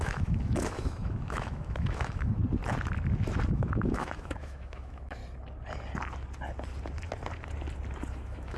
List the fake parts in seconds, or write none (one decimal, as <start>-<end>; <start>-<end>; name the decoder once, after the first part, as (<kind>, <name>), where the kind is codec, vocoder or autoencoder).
0.0-2.4 (autoencoder, DAC-VAE); 3.5-5.2; 8.1-8.6